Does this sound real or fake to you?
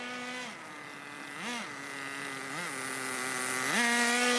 real